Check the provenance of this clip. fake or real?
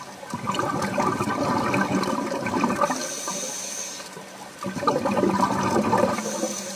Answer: real